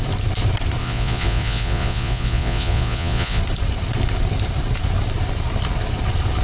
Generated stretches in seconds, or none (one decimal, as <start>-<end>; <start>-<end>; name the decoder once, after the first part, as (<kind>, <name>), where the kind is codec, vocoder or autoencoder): 0.8-3.4 (vocoder, Vocos)